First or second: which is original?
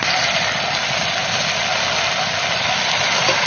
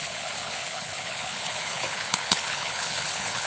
first